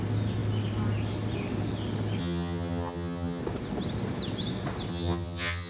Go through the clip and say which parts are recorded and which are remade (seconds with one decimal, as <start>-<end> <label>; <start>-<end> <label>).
0.0-2.2 recorded; 2.2-3.4 remade; 3.4-4.9 recorded; 4.9-5.7 remade